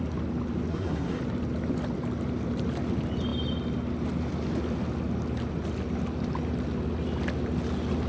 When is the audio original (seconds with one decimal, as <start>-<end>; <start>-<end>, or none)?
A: 0.0-0.7; 1.2-8.1